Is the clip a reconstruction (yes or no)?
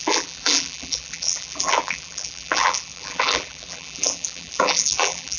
yes